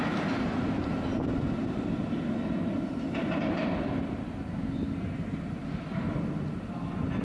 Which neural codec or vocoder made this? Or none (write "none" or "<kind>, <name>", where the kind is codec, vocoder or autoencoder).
none